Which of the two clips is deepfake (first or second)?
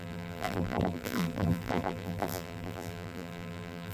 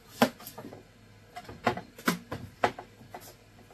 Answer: first